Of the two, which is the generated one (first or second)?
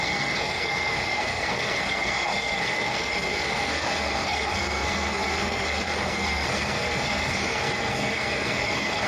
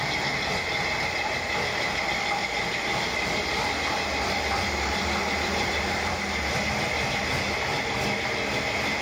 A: first